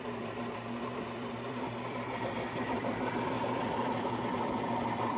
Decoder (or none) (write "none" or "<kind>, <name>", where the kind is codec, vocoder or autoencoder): vocoder, BigVGAN v2